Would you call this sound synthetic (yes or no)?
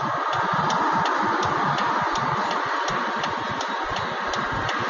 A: no